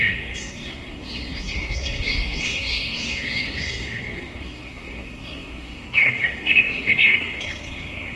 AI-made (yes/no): yes